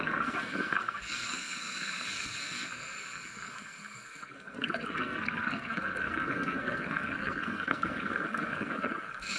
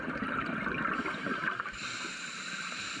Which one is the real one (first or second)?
second